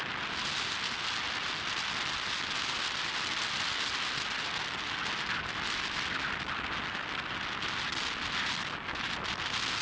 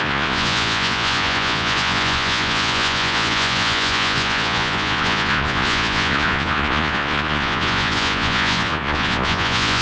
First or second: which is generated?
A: second